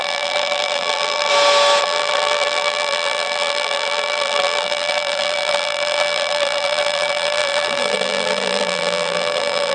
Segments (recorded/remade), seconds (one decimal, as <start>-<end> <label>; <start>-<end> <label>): 0.0-1.3 remade; 1.3-1.8 recorded; 1.8-9.7 remade